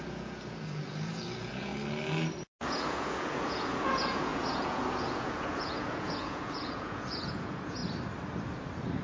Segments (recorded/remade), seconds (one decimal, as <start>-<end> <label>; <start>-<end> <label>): 0.0-1.7 remade; 1.7-2.6 recorded; 2.6-7.8 remade; 7.8-9.0 recorded